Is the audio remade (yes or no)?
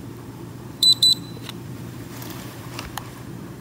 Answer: yes